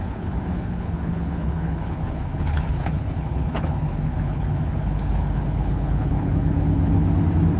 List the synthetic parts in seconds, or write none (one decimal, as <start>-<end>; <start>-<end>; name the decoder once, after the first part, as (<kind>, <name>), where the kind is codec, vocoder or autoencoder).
0.0-7.0 (codec, HILCodec)